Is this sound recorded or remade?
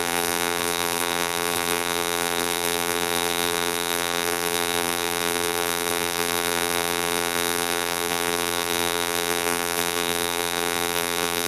remade